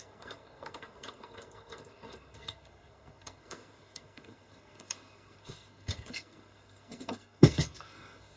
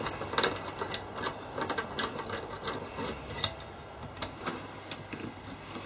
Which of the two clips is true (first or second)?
second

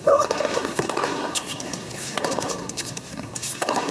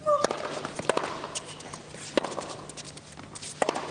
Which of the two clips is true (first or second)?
second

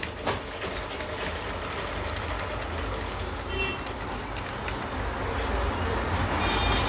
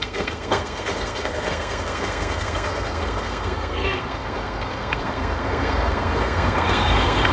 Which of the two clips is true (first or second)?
first